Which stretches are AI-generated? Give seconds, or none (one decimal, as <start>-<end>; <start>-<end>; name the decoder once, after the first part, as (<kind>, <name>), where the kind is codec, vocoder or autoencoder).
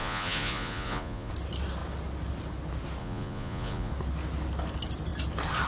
0.0-1.3 (vocoder, Vocos); 3.0-3.9